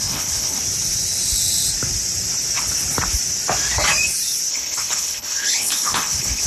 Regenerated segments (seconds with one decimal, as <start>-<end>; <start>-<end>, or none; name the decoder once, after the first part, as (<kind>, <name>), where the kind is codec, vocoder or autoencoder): 0.0-0.6 (codec, HILCodec); 4.5-6.5